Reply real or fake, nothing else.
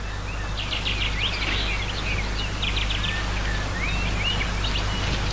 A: real